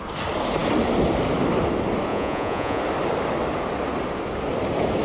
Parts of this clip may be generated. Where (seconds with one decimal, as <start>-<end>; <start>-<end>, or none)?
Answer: 2.1-2.8